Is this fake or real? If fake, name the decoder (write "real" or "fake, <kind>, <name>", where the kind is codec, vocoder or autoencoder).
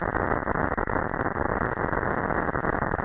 real